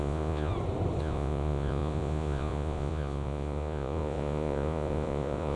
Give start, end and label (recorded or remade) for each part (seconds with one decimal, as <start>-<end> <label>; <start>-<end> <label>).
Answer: 0.0-0.5 remade; 0.5-1.0 recorded; 1.0-5.6 remade